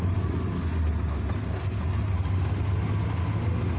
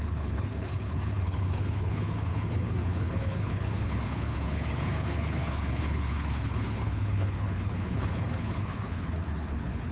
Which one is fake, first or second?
second